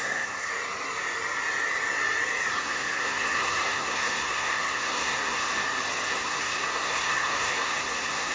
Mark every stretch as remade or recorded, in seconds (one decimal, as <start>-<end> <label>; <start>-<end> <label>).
0.0-0.5 remade; 0.5-2.6 recorded; 2.6-5.5 remade; 5.5-6.1 recorded; 6.1-8.3 remade